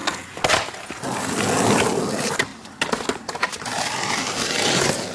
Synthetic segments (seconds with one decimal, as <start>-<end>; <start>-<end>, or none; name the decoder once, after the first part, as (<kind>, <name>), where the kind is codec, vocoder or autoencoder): none